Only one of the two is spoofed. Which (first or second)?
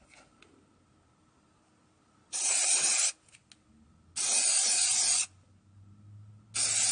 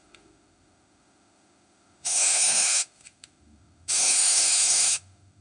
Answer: second